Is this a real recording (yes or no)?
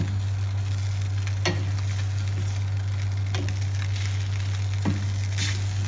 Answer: yes